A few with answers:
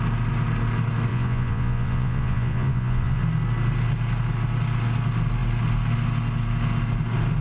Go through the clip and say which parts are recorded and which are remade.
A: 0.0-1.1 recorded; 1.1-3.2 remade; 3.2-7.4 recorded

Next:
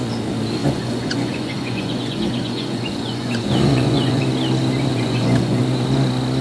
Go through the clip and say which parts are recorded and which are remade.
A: 0.0-0.6 recorded; 0.6-4.2 remade; 4.2-4.9 recorded; 4.9-5.6 remade; 5.6-6.4 recorded

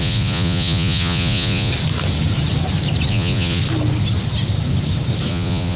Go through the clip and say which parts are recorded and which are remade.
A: 0.0-1.7 remade; 1.7-3.1 recorded; 3.1-3.6 remade; 3.6-5.3 recorded; 5.3-5.8 remade

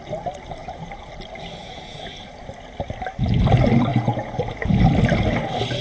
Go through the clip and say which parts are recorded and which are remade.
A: 0.0-0.6 recorded; 0.6-1.1 remade; 1.1-1.6 recorded; 1.6-2.2 remade; 2.2-3.9 recorded; 3.9-4.8 remade; 4.8-5.8 recorded

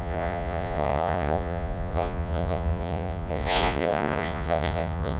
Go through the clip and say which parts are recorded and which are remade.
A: 0.0-5.2 remade

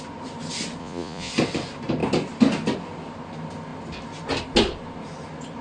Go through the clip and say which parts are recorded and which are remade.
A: 0.0-0.8 recorded; 0.8-1.3 remade; 1.3-5.6 recorded

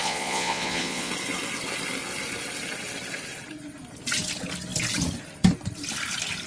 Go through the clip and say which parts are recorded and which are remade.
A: 0.0-1.1 remade; 1.1-6.5 recorded

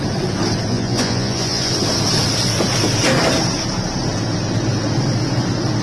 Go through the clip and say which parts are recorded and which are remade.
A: 0.0-0.7 recorded; 0.7-1.7 remade; 1.7-5.8 recorded